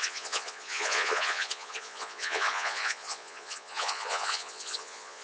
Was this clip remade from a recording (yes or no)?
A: yes